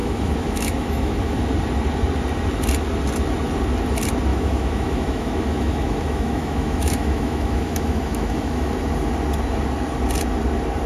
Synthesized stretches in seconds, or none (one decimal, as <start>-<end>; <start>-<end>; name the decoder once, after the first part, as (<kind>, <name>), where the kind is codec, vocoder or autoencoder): 0.0-1.4 (autoencoder, DAC-VAE); 4.3-8.7